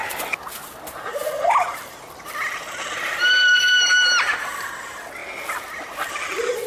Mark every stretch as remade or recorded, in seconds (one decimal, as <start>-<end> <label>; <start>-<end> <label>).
0.0-6.7 recorded